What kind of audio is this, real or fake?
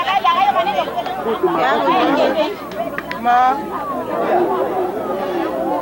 real